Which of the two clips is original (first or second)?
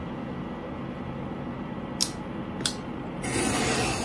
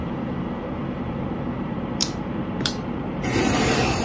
first